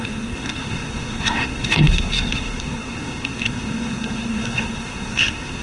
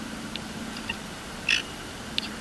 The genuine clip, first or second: second